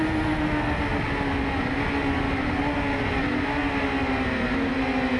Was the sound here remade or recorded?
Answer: recorded